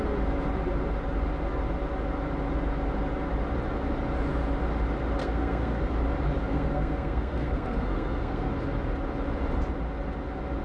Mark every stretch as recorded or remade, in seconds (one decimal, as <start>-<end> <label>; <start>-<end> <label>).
0.0-5.2 recorded; 5.2-5.8 remade; 5.8-6.4 recorded; 6.4-8.5 remade; 8.5-10.6 recorded